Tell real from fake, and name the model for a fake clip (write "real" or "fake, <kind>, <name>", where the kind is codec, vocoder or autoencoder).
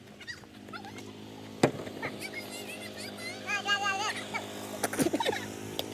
real